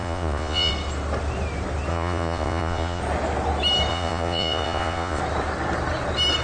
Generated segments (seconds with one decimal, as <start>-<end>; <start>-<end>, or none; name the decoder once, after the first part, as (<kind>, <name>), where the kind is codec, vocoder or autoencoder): 0.0-0.7 (vocoder, Vocos); 1.9-3.0; 3.9-5.2